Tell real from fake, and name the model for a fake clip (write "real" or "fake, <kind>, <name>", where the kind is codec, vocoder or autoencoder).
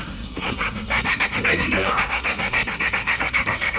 fake, codec, SNAC